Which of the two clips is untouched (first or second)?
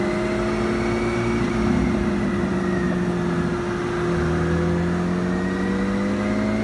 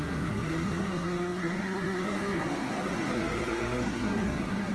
first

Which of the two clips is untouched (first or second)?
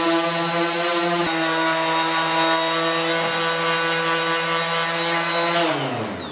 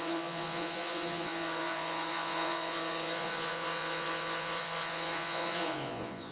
first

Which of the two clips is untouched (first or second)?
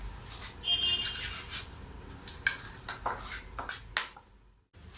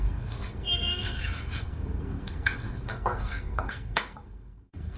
first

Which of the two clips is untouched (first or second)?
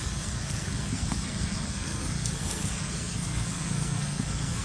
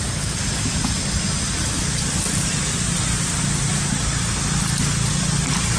second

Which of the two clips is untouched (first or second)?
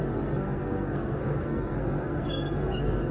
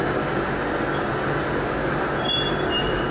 second